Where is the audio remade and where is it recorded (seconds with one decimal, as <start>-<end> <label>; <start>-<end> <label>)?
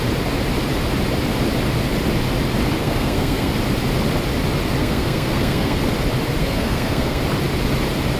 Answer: 0.0-2.8 recorded; 2.8-3.5 remade; 3.5-4.8 recorded; 4.8-5.8 remade; 5.8-6.4 recorded; 6.4-7.2 remade; 7.2-8.2 recorded